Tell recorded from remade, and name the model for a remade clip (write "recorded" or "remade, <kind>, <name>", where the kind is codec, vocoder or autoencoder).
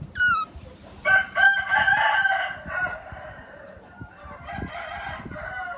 remade, vocoder, BigVGAN v2